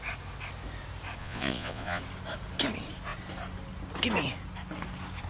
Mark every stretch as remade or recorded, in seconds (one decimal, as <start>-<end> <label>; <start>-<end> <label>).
0.0-1.2 recorded; 1.2-2.0 remade; 2.0-5.3 recorded